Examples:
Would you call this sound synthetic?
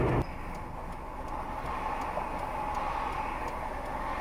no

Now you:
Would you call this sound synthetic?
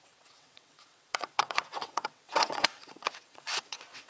yes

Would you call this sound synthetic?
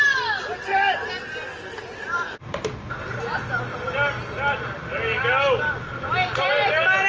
no